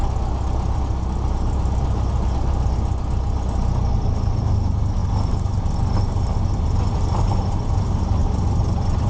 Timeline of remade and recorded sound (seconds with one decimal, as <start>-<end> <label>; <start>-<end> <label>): 0.0-9.1 recorded